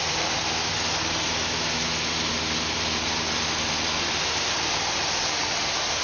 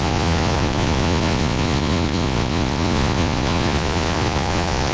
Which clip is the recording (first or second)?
first